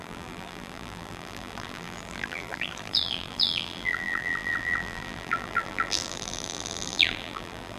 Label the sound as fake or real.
fake